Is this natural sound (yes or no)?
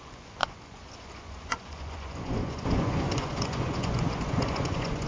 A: no